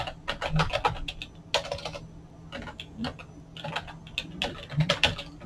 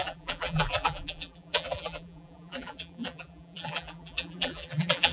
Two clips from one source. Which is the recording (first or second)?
first